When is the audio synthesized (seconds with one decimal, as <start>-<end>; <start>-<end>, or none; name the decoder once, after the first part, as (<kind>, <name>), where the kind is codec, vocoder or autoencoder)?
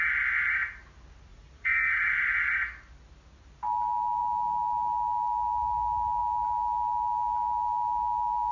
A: 1.3-2.5 (vocoder, Vocos)